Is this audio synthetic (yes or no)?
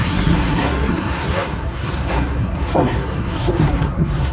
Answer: yes